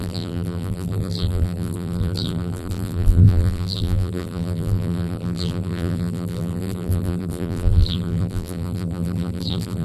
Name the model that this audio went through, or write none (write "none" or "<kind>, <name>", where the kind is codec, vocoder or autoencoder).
vocoder, BigVGAN v2